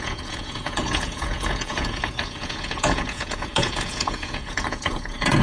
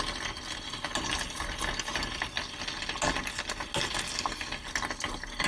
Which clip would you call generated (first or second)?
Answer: first